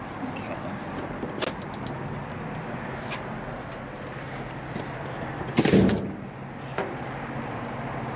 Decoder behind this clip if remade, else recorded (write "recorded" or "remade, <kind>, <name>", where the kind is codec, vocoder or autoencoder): recorded